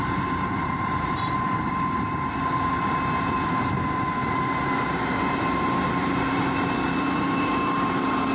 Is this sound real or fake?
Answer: fake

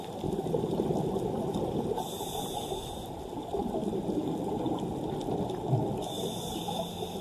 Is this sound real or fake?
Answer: real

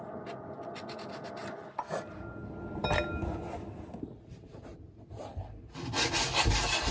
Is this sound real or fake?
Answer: real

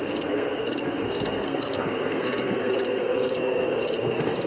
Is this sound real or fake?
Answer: fake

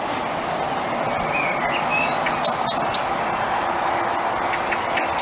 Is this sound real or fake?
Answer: real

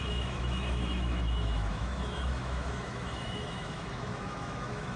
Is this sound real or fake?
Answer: fake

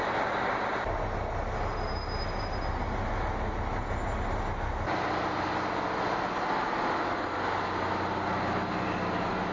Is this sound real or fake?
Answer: real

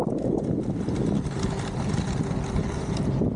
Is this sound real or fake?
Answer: real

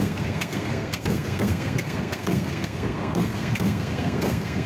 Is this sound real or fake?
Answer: fake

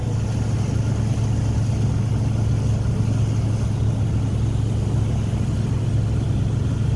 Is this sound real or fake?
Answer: real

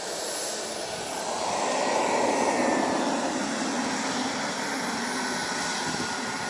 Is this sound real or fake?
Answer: real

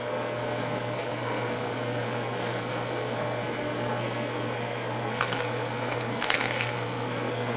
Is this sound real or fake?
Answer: fake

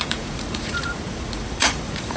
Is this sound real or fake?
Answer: fake